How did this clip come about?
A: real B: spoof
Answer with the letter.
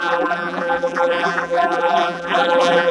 B